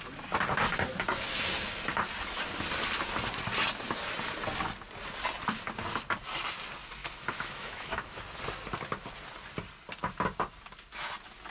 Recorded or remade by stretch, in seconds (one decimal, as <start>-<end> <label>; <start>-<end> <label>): 0.0-7.0 recorded; 7.0-8.2 remade; 8.2-11.5 recorded